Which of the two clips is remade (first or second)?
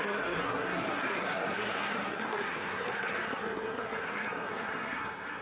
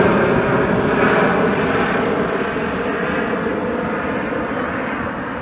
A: first